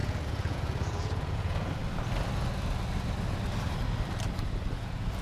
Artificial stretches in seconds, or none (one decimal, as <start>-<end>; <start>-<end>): 0.0-1.8; 4.7-5.2